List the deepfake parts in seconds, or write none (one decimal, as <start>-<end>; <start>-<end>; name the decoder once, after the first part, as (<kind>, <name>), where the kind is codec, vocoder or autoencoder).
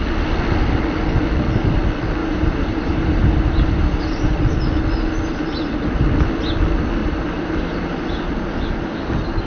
2.2-4.0 (vocoder, BigVGAN v2); 7.0-7.6